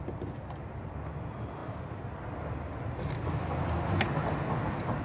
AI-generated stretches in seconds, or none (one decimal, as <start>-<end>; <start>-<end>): none